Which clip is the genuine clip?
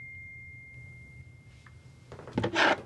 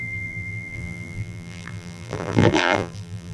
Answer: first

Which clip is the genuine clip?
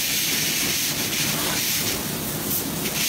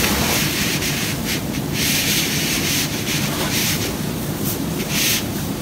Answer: first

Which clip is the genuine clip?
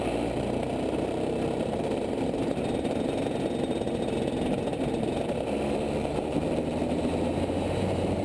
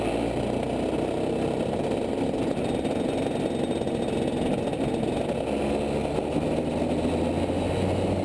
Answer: second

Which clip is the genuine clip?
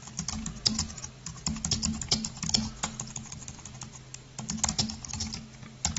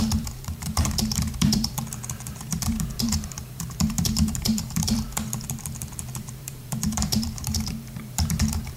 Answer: first